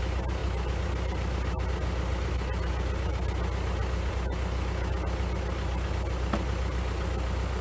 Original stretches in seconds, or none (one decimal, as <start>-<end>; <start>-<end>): 0.0-7.6